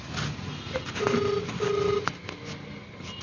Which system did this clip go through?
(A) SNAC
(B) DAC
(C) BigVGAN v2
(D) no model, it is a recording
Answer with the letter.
D